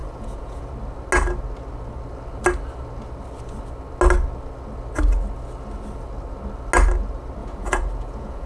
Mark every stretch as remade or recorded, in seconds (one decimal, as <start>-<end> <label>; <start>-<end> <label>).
0.0-0.7 remade; 0.7-7.4 recorded; 7.4-8.5 remade